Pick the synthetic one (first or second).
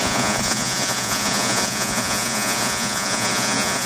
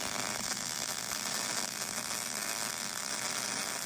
first